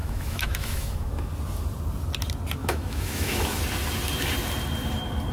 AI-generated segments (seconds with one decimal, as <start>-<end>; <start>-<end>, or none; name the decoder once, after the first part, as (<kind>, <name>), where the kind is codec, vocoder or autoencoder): 0.0-1.3 (autoencoder, DAC-VAE); 2.6-3.6